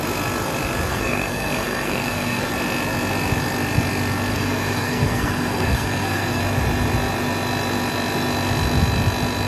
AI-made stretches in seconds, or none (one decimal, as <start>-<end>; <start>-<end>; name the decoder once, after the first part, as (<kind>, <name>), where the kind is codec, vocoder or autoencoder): 0.9-2.5 (codec, SNAC); 4.3-6.4